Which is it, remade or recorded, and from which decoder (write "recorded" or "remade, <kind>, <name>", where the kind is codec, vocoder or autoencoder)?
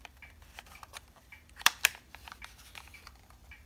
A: remade, vocoder, BigVGAN v2